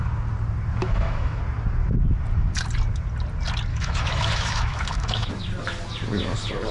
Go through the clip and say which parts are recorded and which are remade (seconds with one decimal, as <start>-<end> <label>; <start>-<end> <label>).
0.0-0.8 recorded; 0.8-1.4 remade; 1.4-3.7 recorded; 3.7-5.3 remade; 5.3-6.7 recorded